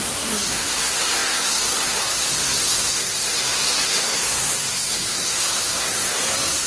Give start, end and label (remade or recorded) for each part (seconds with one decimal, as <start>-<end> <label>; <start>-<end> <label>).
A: 0.0-6.7 remade